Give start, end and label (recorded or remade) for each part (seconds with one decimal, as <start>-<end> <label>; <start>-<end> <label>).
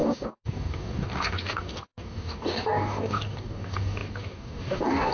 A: 0.0-5.1 remade